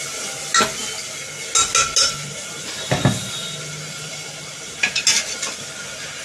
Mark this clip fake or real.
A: real